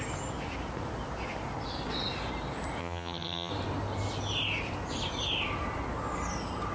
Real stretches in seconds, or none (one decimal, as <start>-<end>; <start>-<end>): 0.0-2.8; 3.5-6.7